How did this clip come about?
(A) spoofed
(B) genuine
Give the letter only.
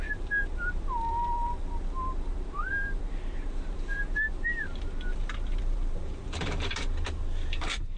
A